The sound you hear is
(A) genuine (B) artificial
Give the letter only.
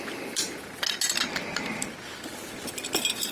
A